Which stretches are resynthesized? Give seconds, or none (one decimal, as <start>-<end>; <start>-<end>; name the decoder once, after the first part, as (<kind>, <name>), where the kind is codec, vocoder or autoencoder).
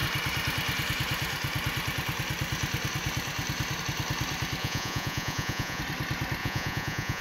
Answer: 4.6-5.8 (vocoder, Vocos); 6.4-7.2